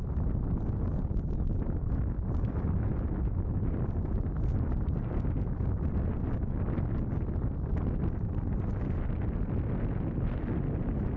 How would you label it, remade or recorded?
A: recorded